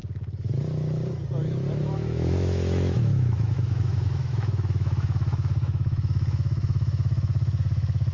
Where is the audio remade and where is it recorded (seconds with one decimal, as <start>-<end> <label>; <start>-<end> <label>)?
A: 0.0-1.8 recorded; 1.8-8.1 remade